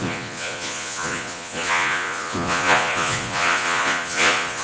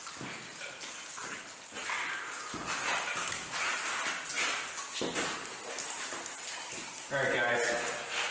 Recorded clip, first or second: second